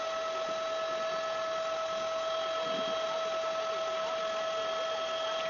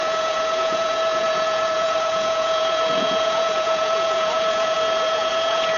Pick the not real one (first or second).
second